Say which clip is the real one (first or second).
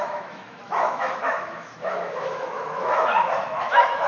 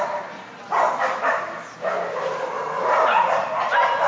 second